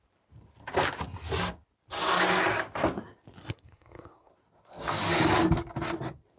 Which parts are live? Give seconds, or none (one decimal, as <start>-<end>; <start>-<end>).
0.0-3.4; 4.3-6.4